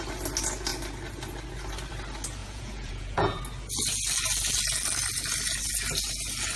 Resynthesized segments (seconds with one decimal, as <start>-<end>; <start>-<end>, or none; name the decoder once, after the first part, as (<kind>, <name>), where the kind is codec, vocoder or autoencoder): 2.4-3.4 (vocoder, Vocos)